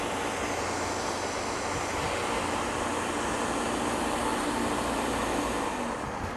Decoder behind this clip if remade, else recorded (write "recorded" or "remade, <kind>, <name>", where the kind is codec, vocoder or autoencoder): recorded